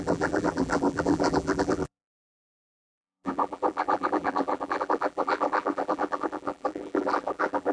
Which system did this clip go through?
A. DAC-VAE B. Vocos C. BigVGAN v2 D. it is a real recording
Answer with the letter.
C